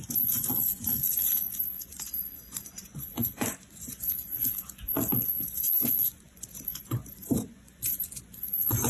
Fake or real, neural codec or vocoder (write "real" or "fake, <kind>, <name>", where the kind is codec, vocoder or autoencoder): fake, vocoder, Vocos